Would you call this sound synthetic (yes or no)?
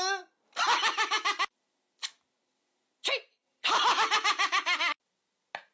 no